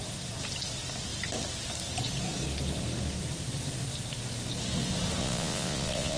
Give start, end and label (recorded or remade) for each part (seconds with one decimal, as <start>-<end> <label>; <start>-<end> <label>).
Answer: 0.0-5.2 recorded; 5.2-6.2 remade